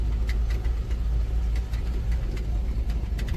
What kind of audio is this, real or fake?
real